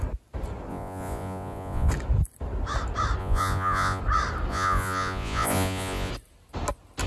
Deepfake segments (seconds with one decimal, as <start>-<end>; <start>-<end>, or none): 0.7-1.9; 3.2-4.0; 4.5-6.1